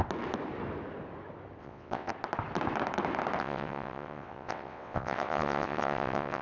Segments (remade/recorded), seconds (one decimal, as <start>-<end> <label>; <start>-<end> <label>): 0.0-1.6 recorded; 1.6-2.1 remade; 2.1-3.4 recorded; 3.4-6.4 remade